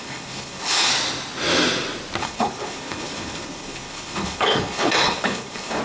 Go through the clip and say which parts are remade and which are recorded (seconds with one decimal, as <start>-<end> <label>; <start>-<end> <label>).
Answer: 0.0-0.9 remade; 0.9-2.2 recorded; 2.2-5.8 remade